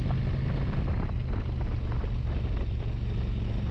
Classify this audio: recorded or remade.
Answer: recorded